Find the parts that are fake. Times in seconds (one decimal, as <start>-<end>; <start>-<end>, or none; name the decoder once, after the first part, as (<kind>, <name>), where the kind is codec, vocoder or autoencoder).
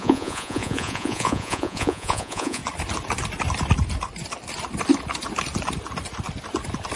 0.0-2.6 (vocoder, Vocos)